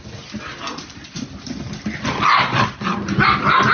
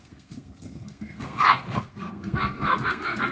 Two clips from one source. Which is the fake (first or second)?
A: second